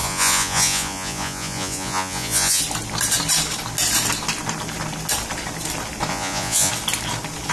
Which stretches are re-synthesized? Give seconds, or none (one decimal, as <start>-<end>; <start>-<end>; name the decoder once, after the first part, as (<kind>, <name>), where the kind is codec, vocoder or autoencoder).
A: 0.0-2.6 (vocoder, Vocos); 6.1-6.7